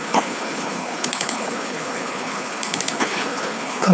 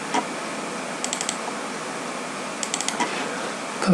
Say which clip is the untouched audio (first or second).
second